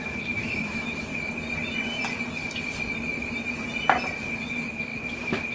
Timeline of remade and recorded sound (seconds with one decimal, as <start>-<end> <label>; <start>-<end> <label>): 0.0-1.1 remade; 1.1-4.4 recorded; 4.4-4.9 remade; 4.9-5.5 recorded